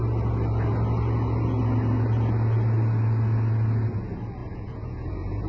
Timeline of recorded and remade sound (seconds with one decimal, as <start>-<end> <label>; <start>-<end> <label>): 0.0-4.4 recorded; 4.4-5.5 remade

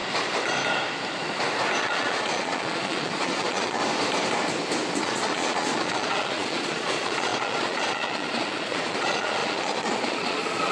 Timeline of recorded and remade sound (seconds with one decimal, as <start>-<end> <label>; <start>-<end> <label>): 0.0-1.8 recorded; 1.8-3.8 remade; 3.8-5.0 recorded; 5.0-10.7 remade

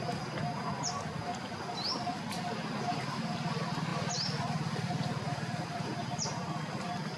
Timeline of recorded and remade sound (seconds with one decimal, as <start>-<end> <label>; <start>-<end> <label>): 0.0-3.9 recorded; 3.9-4.7 remade; 4.7-7.2 recorded

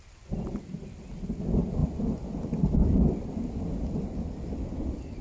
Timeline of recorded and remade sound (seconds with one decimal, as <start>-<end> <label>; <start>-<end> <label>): 0.0-5.2 recorded